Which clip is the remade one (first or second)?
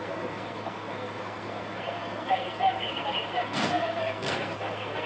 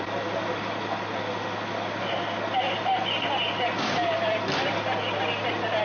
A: first